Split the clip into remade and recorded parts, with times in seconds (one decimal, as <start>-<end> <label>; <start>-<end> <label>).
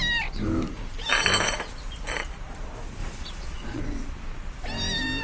0.0-3.0 recorded; 3.0-3.8 remade; 3.8-5.2 recorded